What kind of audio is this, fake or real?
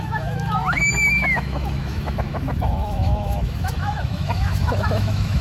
fake